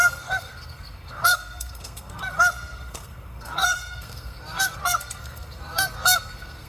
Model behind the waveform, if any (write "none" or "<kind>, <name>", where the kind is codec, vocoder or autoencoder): codec, SNAC